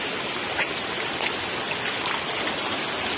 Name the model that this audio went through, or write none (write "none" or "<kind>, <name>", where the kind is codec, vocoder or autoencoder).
none